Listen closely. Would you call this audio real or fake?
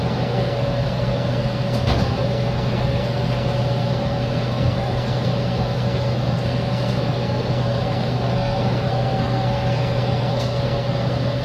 fake